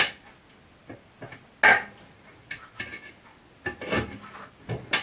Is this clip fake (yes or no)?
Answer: no